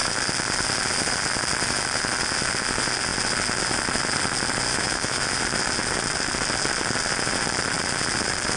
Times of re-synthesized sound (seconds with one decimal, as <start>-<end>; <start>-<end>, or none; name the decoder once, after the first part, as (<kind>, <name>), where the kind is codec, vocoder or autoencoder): 4.7-5.4 (autoencoder, DAC-VAE)